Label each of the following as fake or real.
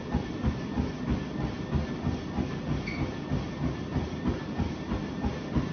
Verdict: real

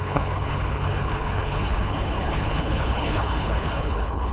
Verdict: fake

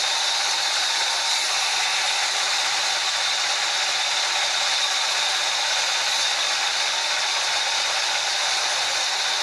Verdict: real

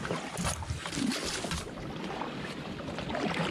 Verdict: fake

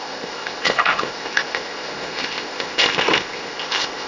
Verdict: fake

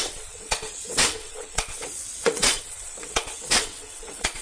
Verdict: fake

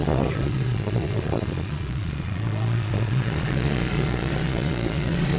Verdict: fake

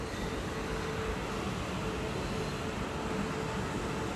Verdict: real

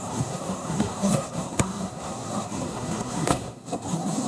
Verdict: fake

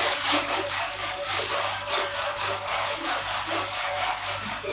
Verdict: fake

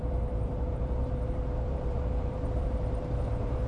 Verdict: fake